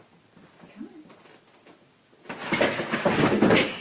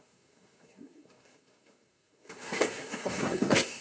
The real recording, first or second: first